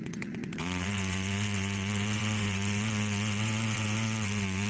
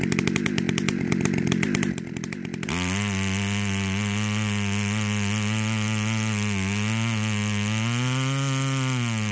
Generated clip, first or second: first